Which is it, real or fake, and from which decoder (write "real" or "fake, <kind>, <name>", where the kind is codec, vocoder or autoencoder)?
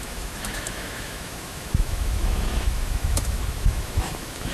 fake, autoencoder, DAC-VAE